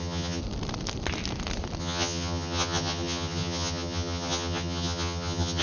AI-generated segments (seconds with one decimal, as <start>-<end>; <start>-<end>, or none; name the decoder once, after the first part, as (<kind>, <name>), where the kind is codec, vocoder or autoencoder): 0.0-0.4 (vocoder, HiFi-GAN); 1.8-5.6